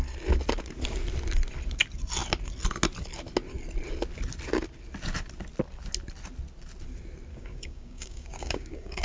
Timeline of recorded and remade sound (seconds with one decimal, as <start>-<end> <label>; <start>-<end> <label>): 0.0-7.3 recorded; 7.3-9.0 remade